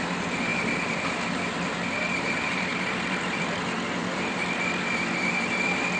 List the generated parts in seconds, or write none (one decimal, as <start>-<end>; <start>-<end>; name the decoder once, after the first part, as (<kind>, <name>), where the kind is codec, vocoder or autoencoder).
0.5-1.7 (vocoder, BigVGAN v2); 2.7-3.6